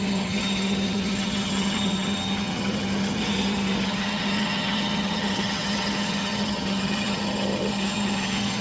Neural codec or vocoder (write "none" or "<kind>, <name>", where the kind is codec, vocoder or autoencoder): vocoder, HiFi-GAN